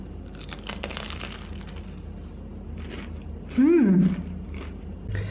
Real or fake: real